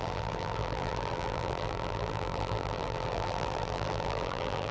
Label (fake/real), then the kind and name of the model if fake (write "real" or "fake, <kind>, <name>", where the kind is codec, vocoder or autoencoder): fake, vocoder, BigVGAN v2